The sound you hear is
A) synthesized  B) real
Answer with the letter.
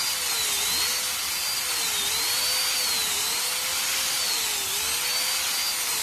B